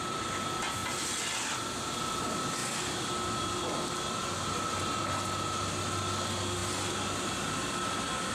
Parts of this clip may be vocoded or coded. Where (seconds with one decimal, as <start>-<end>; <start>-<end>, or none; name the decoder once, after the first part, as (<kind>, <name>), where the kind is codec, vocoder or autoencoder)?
none